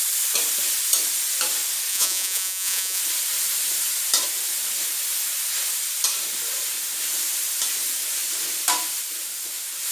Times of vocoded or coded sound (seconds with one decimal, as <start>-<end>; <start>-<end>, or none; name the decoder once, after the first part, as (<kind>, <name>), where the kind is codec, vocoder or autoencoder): 1.9-3.0 (vocoder, Vocos)